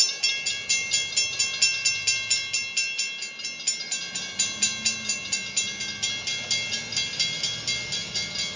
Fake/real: real